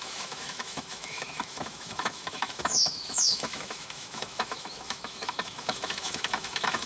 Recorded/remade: remade